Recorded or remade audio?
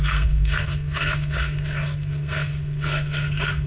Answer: remade